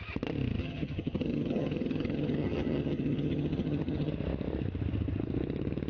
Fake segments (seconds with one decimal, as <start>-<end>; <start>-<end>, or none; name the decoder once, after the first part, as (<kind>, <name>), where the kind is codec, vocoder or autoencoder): 0.6-4.1 (vocoder, HiFi-GAN)